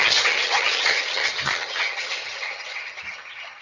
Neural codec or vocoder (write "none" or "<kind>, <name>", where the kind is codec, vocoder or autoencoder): vocoder, HiFi-GAN